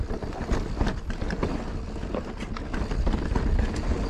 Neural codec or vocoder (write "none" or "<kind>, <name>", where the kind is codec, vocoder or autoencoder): none